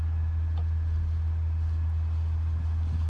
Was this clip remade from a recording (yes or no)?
no